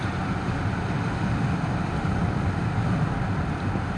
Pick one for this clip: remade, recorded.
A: remade